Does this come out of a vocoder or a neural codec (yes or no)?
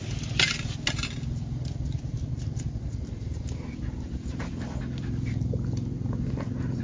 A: no